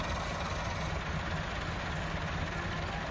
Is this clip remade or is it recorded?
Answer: recorded